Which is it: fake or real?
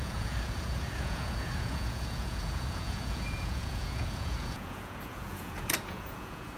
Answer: fake